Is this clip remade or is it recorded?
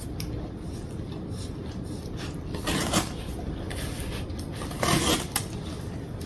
recorded